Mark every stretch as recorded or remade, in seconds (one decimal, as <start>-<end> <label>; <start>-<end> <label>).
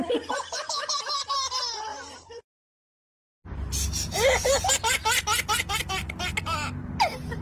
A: 0.0-1.9 recorded; 1.9-2.6 remade; 2.6-7.4 recorded